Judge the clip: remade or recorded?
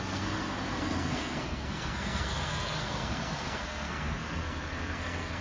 remade